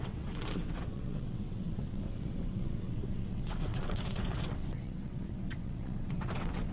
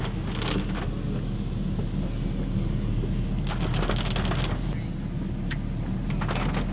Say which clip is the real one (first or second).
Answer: second